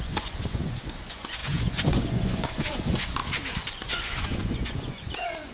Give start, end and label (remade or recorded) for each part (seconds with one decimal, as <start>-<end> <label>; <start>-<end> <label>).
0.0-3.2 remade; 3.2-3.7 recorded; 3.7-5.5 remade